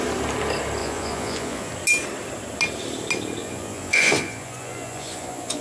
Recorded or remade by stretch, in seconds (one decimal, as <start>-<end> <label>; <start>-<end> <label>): 0.0-0.8 recorded; 0.8-1.7 remade; 1.7-3.4 recorded; 3.4-5.6 remade